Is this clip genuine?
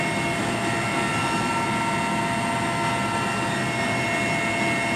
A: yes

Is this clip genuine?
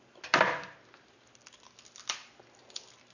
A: yes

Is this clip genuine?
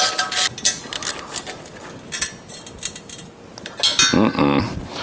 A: yes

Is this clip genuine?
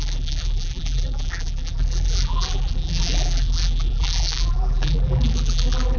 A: no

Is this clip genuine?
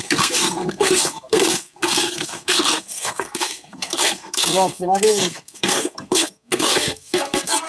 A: no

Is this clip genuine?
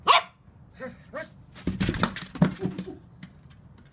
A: yes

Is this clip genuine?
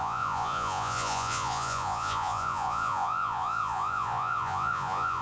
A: no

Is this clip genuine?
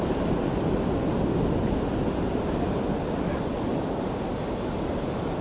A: yes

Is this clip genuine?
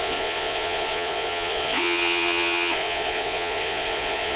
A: no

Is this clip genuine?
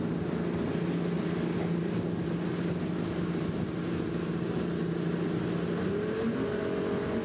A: yes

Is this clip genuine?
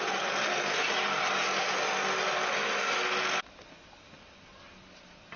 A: yes